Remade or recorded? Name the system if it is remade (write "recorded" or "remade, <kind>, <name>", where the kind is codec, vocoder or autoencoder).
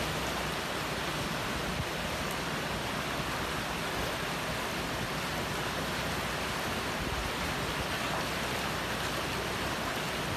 recorded